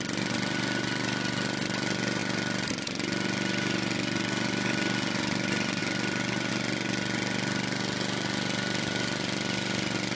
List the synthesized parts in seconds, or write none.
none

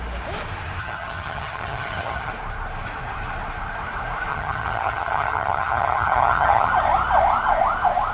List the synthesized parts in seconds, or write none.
0.8-2.3 (vocoder, HiFi-GAN); 4.3-6.7

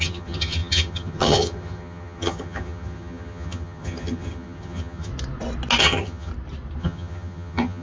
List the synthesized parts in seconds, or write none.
0.0-5.1 (vocoder, HiFi-GAN); 5.8-6.3; 6.8-7.8

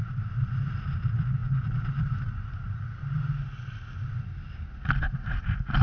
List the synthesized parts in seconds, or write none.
none

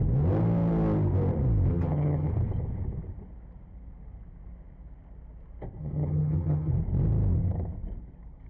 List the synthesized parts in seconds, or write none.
1.7-2.3 (vocoder, HiFi-GAN); 5.8-6.7

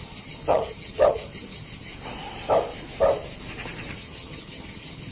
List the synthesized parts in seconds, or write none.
0.0-1.9 (vocoder, HiFi-GAN); 3.9-5.1